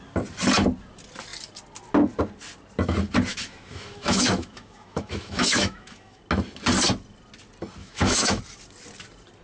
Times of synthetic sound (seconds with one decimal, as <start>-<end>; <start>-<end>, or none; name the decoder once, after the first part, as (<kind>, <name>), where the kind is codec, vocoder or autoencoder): 3.3-6.2 (autoencoder, DAC-VAE); 7.8-8.4